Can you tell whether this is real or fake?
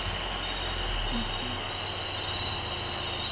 real